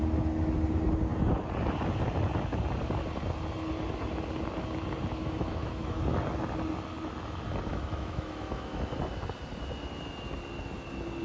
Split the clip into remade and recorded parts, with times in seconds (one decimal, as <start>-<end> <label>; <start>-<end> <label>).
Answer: 0.0-5.2 recorded; 5.2-6.0 remade; 6.0-7.7 recorded; 7.7-9.0 remade; 9.0-11.2 recorded